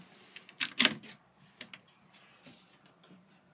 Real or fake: real